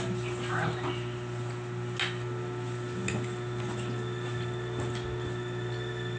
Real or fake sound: real